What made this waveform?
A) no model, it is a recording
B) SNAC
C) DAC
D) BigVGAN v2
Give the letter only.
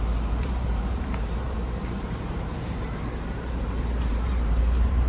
D